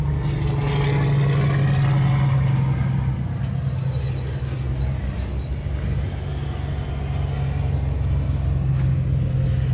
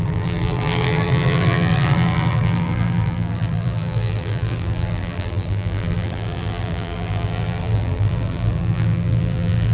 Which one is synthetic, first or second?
second